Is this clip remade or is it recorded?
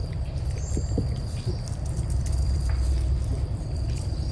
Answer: remade